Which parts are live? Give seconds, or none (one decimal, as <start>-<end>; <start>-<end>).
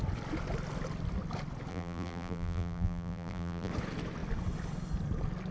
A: 0.0-1.7; 3.7-5.5